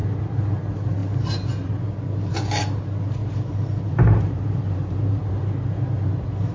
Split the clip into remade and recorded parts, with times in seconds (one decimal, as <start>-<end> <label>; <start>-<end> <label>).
0.0-3.2 recorded; 3.2-6.1 remade; 6.1-6.5 recorded